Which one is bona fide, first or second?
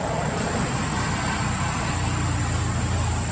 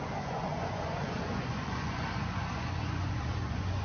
first